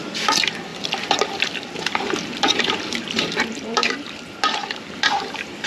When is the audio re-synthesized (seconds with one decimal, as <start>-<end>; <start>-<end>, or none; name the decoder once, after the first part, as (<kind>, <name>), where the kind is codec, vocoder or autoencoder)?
0.7-3.9 (vocoder, BigVGAN v2); 4.6-5.2